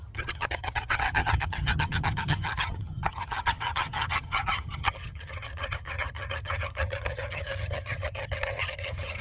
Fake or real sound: fake